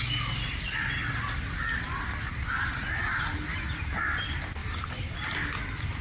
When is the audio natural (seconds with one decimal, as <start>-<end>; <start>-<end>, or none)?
0.0-6.0